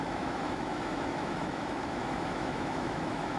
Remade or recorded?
remade